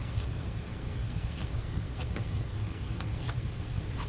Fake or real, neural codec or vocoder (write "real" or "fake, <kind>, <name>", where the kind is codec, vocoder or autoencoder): fake, codec, SNAC